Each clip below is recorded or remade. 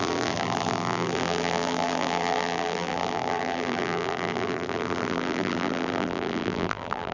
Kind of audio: remade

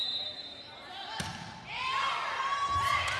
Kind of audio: recorded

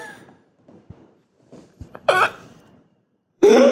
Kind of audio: remade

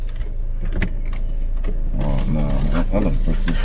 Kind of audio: recorded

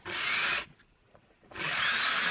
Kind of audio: remade